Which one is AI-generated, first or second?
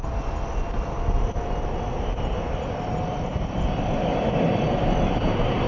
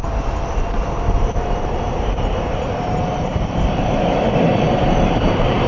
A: second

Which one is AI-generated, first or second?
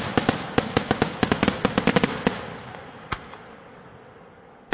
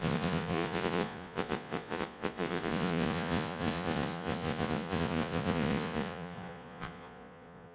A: second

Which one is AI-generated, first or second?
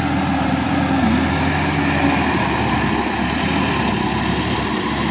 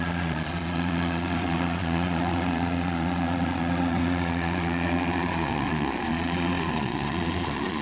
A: second